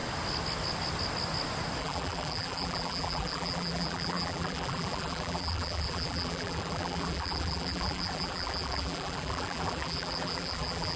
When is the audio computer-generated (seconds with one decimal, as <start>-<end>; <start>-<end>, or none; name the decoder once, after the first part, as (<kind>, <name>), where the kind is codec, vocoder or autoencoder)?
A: 1.8-11.0 (vocoder, BigVGAN v2)